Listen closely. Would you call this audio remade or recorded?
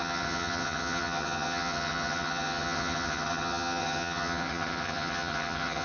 remade